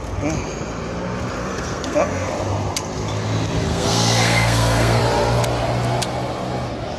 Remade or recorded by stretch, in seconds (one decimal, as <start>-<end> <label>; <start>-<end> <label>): 0.0-1.4 recorded; 1.4-2.3 remade; 2.3-3.7 recorded; 3.7-5.0 remade; 5.0-7.0 recorded